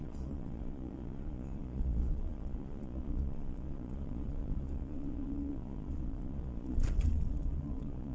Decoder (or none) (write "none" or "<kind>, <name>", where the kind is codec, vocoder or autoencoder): vocoder, Vocos